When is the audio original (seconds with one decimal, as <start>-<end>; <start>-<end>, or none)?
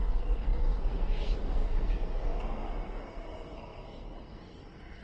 none